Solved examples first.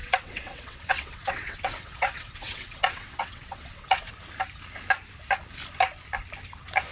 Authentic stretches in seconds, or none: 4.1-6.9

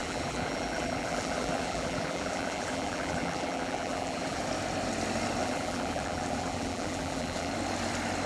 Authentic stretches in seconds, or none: 4.4-5.4; 7.5-8.3

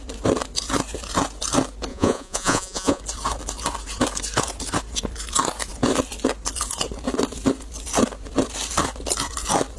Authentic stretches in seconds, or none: 0.0-1.9; 3.0-9.8

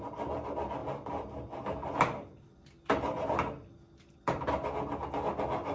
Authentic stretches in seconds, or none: 0.0-5.7

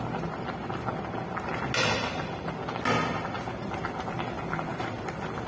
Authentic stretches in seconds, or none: 0.0-5.5

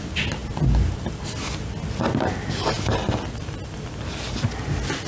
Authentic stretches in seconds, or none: 0.0-5.1

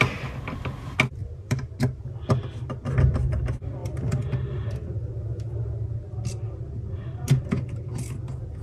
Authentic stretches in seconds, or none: 0.0-1.2; 1.8-8.6

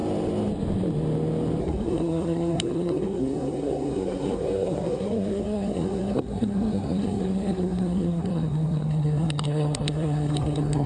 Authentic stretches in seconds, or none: 0.0-1.6